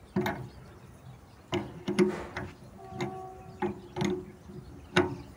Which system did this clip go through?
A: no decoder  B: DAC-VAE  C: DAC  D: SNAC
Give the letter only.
A